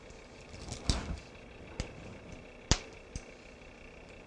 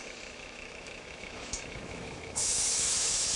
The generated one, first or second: second